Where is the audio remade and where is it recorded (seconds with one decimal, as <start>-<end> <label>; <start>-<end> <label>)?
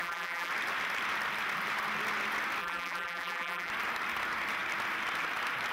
0.0-0.5 remade; 0.5-2.6 recorded; 2.6-3.7 remade; 3.7-5.7 recorded